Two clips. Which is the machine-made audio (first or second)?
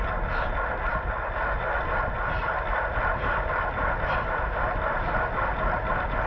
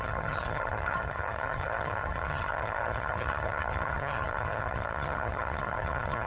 second